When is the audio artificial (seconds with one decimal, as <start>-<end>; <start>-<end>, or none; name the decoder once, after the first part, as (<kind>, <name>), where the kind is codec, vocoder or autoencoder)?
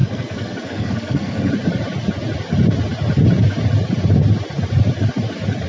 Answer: 0.0-1.5 (codec, SNAC)